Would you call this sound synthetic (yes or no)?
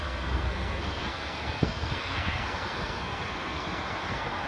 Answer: yes